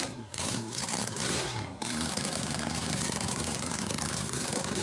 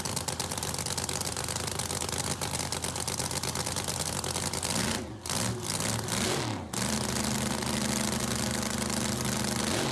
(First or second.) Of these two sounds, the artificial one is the first